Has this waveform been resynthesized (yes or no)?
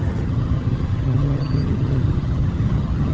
yes